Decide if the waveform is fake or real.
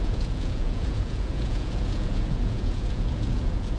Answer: fake